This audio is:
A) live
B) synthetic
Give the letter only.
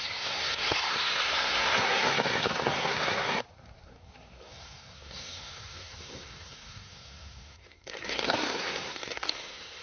B